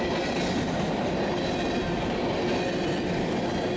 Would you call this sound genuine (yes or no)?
yes